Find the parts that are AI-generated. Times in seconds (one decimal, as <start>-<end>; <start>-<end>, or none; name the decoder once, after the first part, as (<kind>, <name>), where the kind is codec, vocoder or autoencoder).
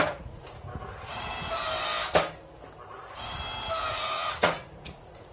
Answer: 0.0-0.7 (vocoder, Vocos); 3.9-5.3